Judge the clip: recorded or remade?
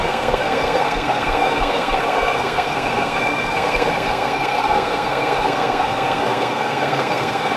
remade